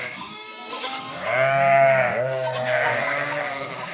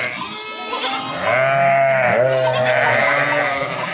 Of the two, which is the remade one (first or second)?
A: first